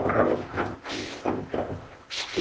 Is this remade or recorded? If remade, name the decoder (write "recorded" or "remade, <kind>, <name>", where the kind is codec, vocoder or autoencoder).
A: remade, codec, ZipCodec